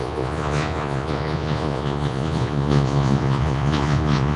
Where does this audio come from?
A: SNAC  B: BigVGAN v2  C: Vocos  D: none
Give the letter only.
C